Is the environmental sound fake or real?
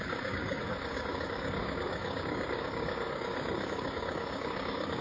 fake